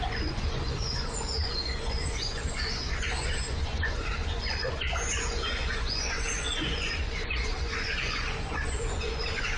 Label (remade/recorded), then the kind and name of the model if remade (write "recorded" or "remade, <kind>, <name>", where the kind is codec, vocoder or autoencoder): remade, vocoder, Vocos